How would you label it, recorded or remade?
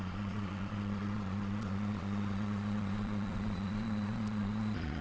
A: remade